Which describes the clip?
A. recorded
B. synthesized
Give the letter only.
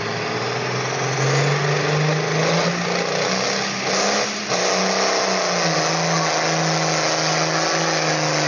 A